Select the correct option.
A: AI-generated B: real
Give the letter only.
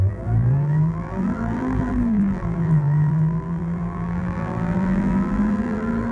A